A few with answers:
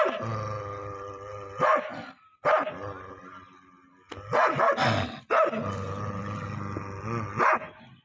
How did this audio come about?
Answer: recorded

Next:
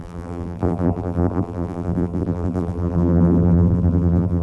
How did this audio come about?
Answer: remade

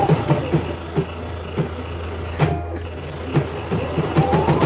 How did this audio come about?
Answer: recorded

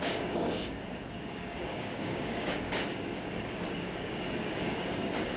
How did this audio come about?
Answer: remade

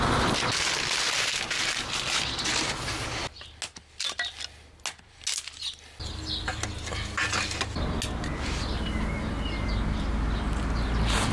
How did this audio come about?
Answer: recorded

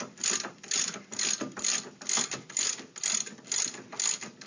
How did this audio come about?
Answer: recorded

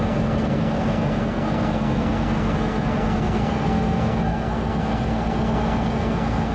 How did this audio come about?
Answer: remade